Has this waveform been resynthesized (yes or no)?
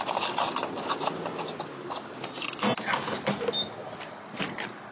no